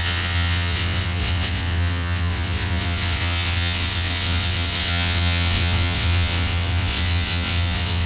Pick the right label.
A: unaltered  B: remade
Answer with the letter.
B